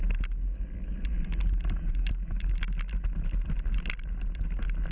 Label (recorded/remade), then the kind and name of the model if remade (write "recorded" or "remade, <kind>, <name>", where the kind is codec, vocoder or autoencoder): recorded